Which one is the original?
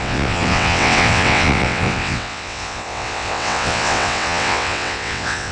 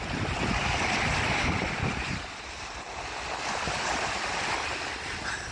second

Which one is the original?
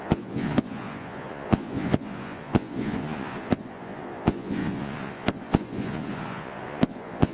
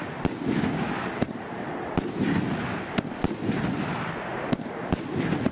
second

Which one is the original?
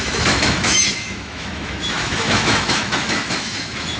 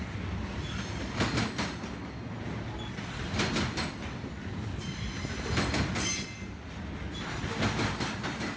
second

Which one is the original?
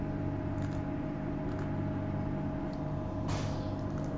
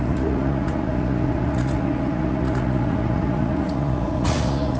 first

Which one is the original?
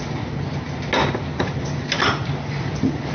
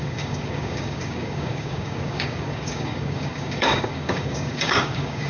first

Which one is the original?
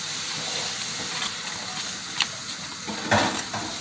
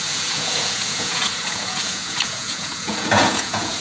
first